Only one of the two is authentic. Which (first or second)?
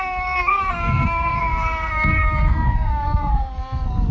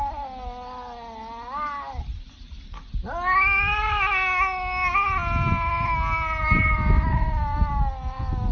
second